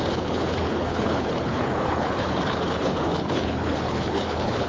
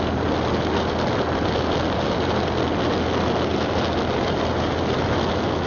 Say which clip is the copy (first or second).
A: first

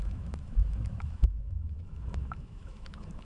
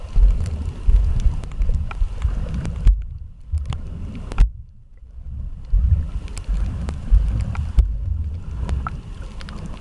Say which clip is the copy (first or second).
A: first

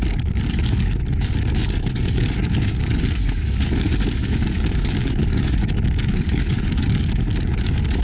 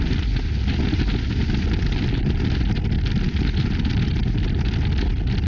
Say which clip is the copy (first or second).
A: first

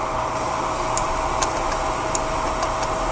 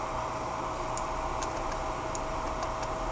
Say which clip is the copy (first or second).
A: first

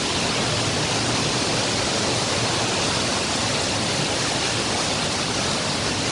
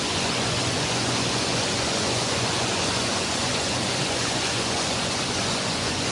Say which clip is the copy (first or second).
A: second